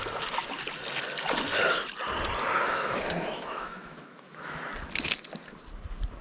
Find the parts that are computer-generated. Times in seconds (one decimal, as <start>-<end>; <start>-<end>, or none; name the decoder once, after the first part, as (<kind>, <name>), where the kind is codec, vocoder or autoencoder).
2.6-4.6 (autoencoder, DAC-VAE)

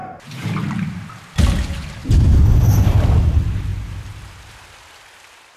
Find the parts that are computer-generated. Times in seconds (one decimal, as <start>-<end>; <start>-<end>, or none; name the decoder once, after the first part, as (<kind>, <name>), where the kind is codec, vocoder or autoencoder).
2.0-2.6 (vocoder, BigVGAN v2); 3.7-4.5